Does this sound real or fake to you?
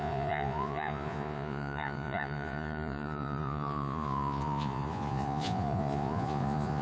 fake